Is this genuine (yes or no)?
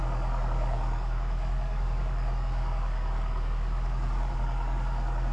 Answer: no